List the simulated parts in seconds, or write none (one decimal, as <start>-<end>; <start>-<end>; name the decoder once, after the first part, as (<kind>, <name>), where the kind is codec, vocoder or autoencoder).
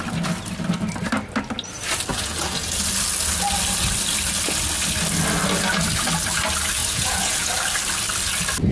2.1-2.8 (vocoder, Vocos); 6.8-7.5